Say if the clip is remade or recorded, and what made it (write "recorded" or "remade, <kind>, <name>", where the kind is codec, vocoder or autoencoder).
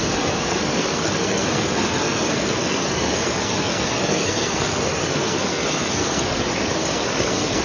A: remade, codec, SNAC